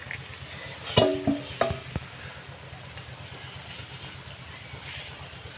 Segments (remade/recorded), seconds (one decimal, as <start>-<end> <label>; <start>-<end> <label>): 0.0-5.6 recorded